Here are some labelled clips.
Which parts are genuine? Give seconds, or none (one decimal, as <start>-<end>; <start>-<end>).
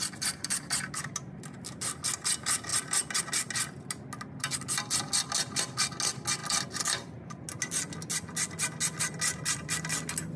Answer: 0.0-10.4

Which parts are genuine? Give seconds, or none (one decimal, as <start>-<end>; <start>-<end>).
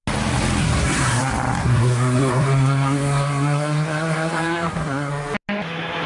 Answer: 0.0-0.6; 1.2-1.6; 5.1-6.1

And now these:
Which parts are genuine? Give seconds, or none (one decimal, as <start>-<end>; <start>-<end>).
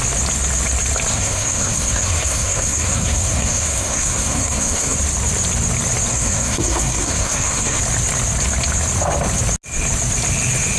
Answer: 0.0-1.1; 5.0-6.1; 7.8-10.8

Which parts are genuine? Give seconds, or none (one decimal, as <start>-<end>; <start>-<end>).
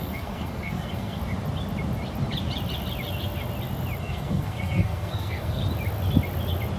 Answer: 1.2-4.0; 5.6-6.8